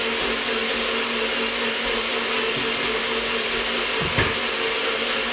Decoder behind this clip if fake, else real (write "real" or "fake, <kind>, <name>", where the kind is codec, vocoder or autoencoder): real